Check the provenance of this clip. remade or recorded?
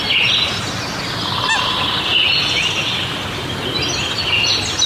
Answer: recorded